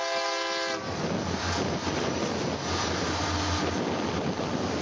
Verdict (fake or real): real